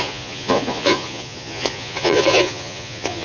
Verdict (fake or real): fake